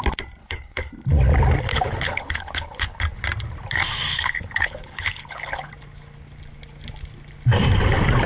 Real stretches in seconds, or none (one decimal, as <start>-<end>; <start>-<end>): 0.0-0.4; 0.9-1.7; 3.0-4.1; 5.7-8.3